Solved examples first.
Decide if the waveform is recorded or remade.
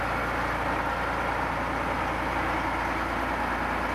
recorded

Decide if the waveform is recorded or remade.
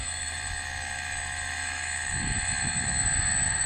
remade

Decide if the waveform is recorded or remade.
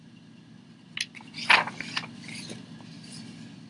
recorded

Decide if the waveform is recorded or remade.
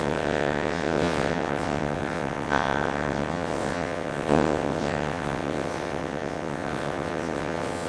remade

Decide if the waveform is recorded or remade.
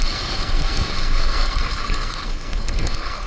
remade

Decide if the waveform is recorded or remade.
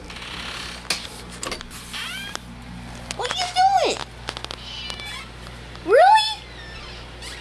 recorded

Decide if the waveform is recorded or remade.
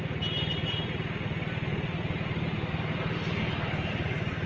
recorded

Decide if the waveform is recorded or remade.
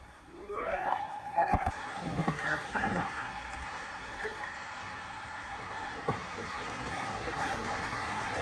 remade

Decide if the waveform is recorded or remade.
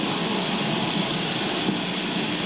remade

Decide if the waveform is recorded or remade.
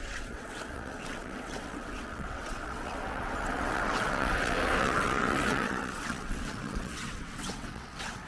remade